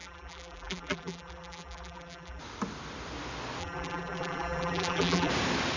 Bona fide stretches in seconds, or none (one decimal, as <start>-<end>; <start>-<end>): 2.4-3.6; 5.3-5.8